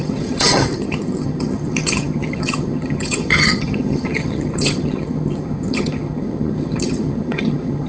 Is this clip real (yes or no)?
no